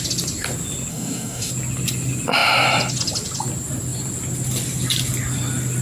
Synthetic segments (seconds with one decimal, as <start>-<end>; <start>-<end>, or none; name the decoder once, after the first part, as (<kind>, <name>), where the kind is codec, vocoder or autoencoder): 0.9-1.5 (codec, DAC)